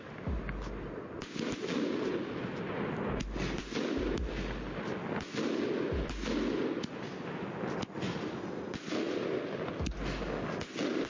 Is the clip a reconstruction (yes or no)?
no